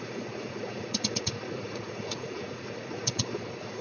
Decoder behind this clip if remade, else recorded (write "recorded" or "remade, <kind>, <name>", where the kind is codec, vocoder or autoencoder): remade, vocoder, Vocos